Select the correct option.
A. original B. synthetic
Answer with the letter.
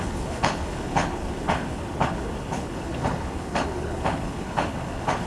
B